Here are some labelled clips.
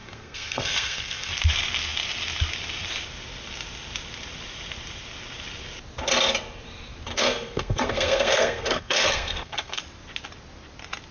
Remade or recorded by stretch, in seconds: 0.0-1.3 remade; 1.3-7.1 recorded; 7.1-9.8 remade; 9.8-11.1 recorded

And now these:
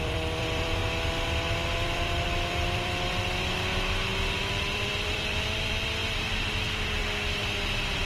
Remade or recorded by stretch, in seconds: 0.0-0.8 remade; 0.8-1.5 recorded; 1.5-3.7 remade; 3.7-4.4 recorded; 4.4-6.0 remade; 6.0-6.6 recorded; 6.6-7.0 remade; 7.0-8.1 recorded

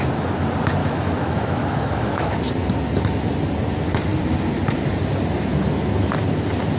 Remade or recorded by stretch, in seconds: 0.0-0.8 recorded; 0.8-2.4 remade; 2.4-6.8 recorded

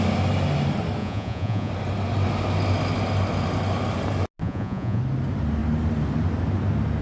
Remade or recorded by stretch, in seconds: 0.0-1.0 recorded; 1.0-1.7 remade; 1.7-4.4 recorded; 4.4-5.0 remade; 5.0-7.0 recorded

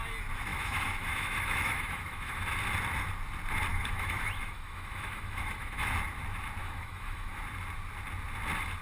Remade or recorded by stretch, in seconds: 0.0-0.5 recorded; 0.5-2.4 remade; 2.4-3.7 recorded; 3.7-5.9 remade; 5.9-6.6 recorded; 6.6-7.4 remade; 7.4-8.8 recorded

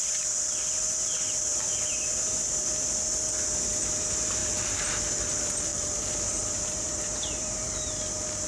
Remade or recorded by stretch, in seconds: 0.0-1.5 recorded; 1.5-2.4 remade; 2.4-4.4 recorded; 4.4-4.9 remade; 4.9-5.7 recorded; 5.7-7.9 remade; 7.9-8.5 recorded

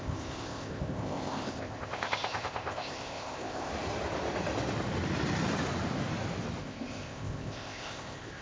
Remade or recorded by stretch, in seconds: 0.0-3.7 remade; 3.7-6.6 recorded; 6.6-8.4 remade